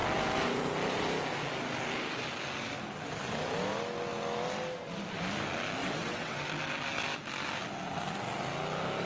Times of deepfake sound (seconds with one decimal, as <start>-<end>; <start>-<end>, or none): 5.8-6.4